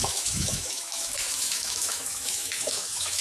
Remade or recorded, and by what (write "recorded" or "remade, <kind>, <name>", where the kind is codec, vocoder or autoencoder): remade, autoencoder, DAC-VAE